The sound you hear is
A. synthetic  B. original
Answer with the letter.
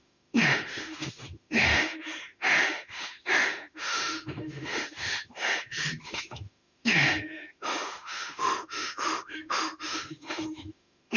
A